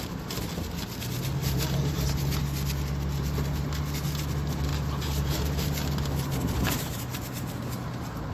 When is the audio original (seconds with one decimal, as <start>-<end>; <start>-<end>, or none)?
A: 0.0-1.4; 2.4-4.7; 7.5-8.3